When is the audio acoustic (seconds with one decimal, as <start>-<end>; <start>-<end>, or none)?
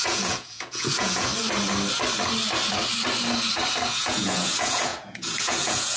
1.3-3.9